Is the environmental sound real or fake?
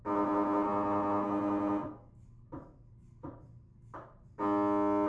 real